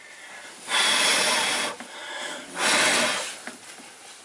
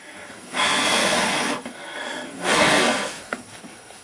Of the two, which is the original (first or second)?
first